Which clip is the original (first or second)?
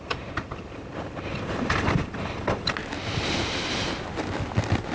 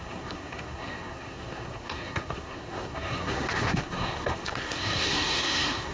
first